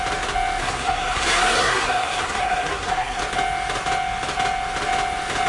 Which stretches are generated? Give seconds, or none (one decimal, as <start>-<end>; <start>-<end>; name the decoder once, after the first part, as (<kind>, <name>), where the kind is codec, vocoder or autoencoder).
0.6-3.2 (codec, SNAC)